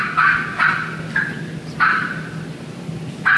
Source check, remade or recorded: recorded